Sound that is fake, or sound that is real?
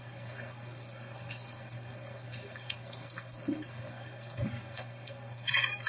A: fake